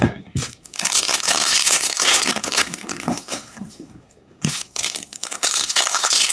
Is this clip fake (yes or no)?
yes